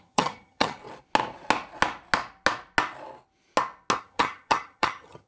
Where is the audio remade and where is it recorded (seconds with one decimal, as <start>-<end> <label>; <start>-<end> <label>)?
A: 0.0-0.8 remade; 0.8-4.0 recorded; 4.0-5.3 remade